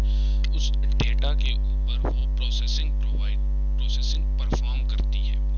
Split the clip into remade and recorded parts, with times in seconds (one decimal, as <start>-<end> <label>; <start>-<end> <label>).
0.0-5.6 recorded

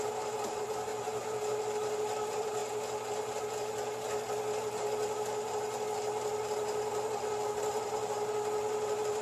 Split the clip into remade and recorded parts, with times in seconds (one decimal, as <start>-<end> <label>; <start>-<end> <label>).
0.0-0.9 remade; 0.9-1.6 recorded; 1.6-2.6 remade; 2.6-3.4 recorded; 3.4-9.2 remade

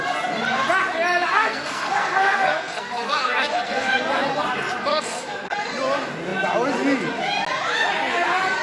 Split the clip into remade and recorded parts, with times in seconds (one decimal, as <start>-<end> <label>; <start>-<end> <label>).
0.0-1.3 recorded; 1.3-4.0 remade; 4.0-4.9 recorded; 4.9-5.7 remade; 5.7-8.6 recorded

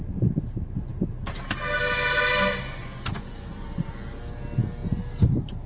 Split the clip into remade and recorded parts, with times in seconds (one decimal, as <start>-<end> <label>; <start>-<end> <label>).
0.0-2.7 recorded; 2.7-3.9 remade; 3.9-5.7 recorded

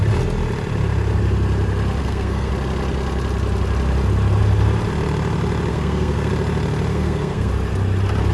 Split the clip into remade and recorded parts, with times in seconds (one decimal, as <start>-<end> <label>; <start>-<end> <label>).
0.0-2.0 recorded; 2.0-2.5 remade; 2.5-5.7 recorded; 5.7-6.3 remade; 6.3-6.9 recorded; 6.9-7.5 remade; 7.5-8.3 recorded

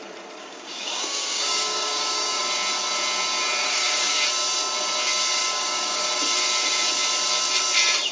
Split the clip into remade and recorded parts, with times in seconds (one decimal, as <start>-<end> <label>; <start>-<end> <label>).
0.0-0.4 recorded; 0.4-2.4 remade; 2.4-3.6 recorded; 3.6-4.2 remade; 4.2-5.4 recorded; 5.4-6.1 remade; 6.1-8.1 recorded